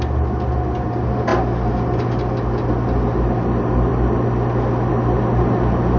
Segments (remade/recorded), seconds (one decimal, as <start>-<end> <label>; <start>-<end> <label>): 0.0-6.0 recorded